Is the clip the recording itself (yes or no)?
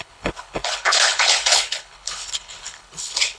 no